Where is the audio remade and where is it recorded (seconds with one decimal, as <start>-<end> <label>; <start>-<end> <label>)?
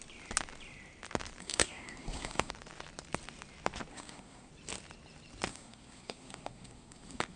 0.0-1.4 recorded; 1.4-2.5 remade; 2.5-3.9 recorded; 3.9-4.5 remade; 4.5-5.5 recorded; 5.5-7.4 remade